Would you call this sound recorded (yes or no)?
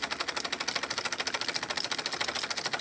yes